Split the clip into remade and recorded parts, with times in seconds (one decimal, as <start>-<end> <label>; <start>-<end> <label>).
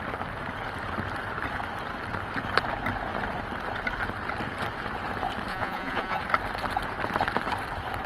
0.0-5.5 recorded; 5.5-6.2 remade; 6.2-8.1 recorded